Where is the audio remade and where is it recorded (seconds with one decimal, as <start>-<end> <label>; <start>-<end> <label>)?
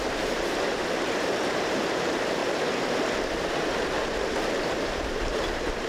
0.0-2.4 remade; 2.4-4.5 recorded; 4.5-5.9 remade